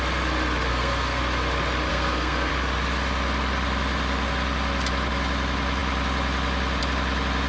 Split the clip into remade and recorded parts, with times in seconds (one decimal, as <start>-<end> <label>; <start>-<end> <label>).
0.0-0.7 recorded; 0.7-1.2 remade; 1.2-1.9 recorded; 1.9-2.5 remade; 2.5-7.5 recorded